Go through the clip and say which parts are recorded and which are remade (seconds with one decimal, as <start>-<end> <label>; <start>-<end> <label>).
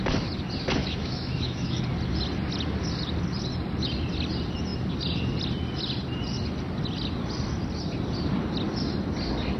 0.0-0.8 recorded; 0.8-1.8 remade; 1.8-9.6 recorded